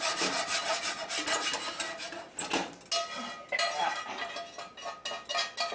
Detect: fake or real real